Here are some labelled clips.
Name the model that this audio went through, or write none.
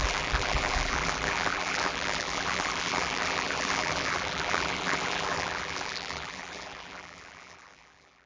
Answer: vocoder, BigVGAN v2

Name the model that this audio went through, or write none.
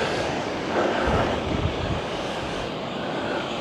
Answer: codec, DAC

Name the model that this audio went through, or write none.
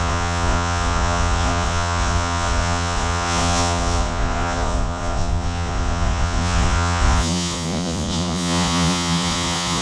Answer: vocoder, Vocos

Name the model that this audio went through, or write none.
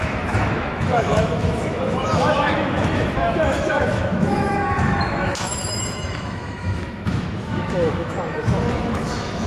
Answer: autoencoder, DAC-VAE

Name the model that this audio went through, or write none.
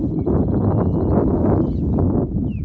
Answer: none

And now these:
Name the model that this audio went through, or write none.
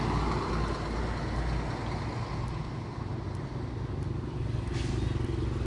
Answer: none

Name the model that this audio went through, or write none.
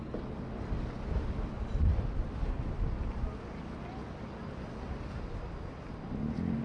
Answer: none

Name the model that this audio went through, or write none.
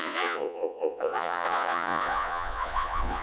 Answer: vocoder, Vocos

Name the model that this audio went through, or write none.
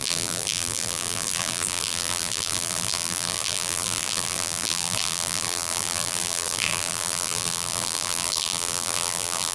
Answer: vocoder, BigVGAN v2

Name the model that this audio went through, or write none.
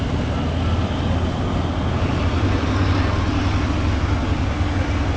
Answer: none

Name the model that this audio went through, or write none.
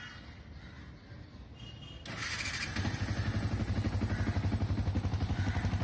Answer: none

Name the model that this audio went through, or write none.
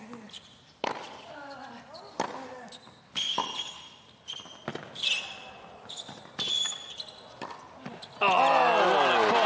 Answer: none